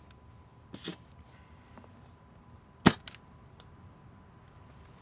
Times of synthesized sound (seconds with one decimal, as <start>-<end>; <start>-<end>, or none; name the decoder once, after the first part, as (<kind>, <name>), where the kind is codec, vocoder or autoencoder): none

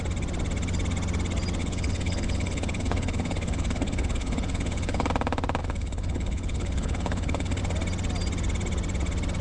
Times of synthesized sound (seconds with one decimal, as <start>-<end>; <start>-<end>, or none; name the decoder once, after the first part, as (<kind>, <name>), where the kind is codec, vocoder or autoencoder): 1.6-5.1 (codec, HILCodec); 5.6-7.6

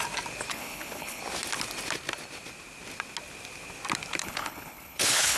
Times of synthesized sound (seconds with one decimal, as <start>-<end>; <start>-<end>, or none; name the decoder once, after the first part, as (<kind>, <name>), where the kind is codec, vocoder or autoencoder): 0.5-1.2 (codec, HILCodec); 4.2-5.4